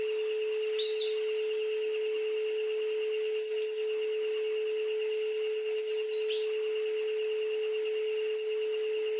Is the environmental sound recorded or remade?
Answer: recorded